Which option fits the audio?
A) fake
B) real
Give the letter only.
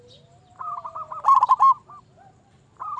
B